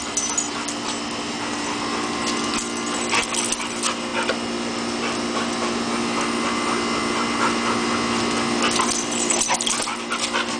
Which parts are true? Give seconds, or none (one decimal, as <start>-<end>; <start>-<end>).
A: 0.0-10.6